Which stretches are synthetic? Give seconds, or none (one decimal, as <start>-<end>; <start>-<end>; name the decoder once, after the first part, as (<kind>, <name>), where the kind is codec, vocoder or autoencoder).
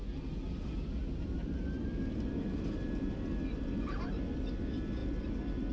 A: 1.0-4.4 (vocoder, BigVGAN v2); 5.0-5.7